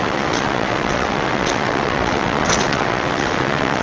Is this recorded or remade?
remade